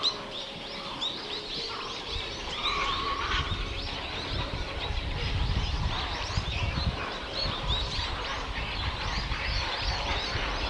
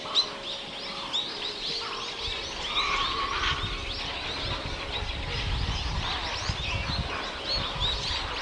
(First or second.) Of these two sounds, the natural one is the second